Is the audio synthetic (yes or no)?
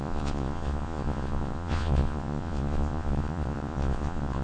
yes